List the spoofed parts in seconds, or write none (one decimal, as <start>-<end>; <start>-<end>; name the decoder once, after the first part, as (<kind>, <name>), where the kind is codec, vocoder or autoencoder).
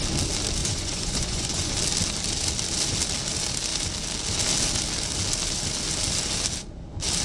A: 0.6-1.7 (vocoder, Vocos)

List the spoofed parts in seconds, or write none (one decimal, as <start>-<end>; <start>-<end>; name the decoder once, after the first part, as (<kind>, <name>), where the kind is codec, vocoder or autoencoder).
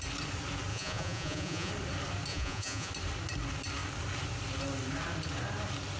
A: 0.7-1.7 (vocoder, Vocos); 2.3-2.9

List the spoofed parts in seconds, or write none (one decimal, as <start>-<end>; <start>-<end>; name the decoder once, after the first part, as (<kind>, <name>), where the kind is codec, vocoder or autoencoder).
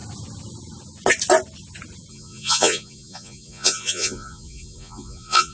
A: 2.1-5.5 (vocoder, Vocos)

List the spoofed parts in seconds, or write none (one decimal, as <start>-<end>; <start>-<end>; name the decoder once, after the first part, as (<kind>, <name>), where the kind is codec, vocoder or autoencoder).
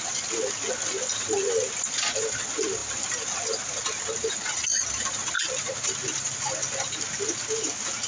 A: none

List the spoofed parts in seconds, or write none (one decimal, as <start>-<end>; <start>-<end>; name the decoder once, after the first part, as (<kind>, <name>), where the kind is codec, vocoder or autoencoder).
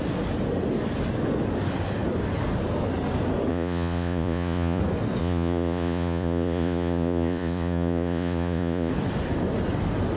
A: 3.5-4.8 (vocoder, Vocos); 5.2-8.9